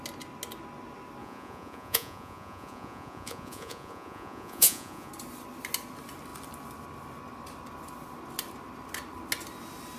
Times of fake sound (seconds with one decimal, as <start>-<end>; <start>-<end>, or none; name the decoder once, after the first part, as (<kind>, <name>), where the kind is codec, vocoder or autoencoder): 1.2-5.1 (vocoder, Vocos)